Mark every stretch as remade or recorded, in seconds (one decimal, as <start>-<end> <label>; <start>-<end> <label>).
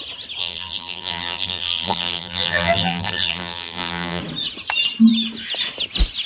0.0-0.4 recorded; 0.4-4.2 remade; 4.2-6.3 recorded